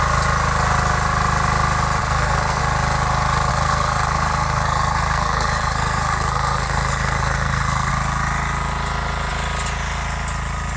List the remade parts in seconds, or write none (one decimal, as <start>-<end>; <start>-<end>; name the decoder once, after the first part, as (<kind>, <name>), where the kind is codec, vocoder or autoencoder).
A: 2.0-2.6 (codec, SNAC); 3.5-7.9